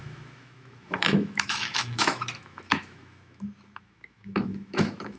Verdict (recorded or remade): remade